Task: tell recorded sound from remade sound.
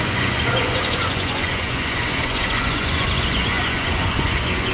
remade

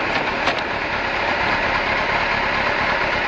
recorded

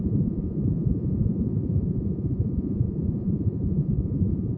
remade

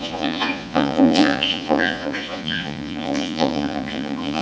remade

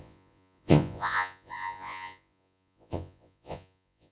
remade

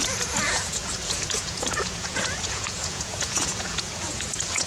remade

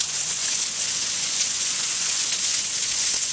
remade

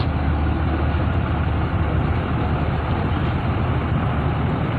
recorded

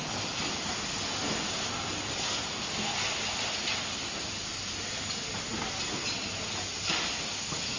recorded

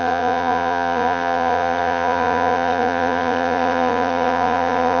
remade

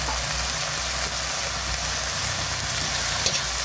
recorded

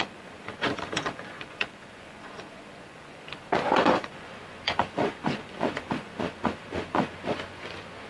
remade